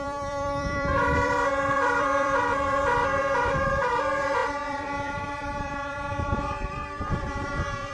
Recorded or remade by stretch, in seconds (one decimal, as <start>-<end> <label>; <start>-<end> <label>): 0.0-7.9 remade